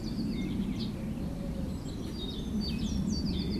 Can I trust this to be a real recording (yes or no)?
yes